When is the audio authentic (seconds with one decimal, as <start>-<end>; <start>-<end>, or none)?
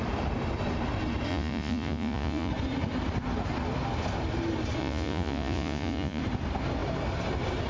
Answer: 0.0-1.3; 2.5-4.8; 6.2-7.7